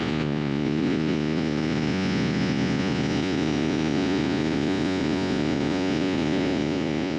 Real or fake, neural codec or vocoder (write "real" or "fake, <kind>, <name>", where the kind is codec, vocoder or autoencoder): fake, vocoder, Vocos